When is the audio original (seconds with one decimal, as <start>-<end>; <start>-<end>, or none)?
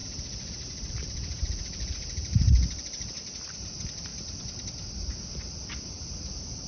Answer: 0.0-0.9; 4.1-5.3